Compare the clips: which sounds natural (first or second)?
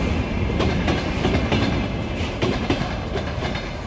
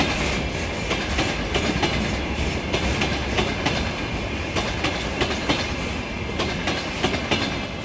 second